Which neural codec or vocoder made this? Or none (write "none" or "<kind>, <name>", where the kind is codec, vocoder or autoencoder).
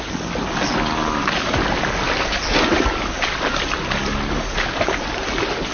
none